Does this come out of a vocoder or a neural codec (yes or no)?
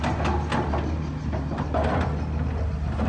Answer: no